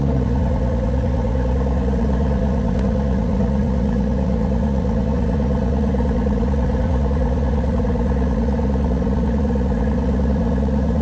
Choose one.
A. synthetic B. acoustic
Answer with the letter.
A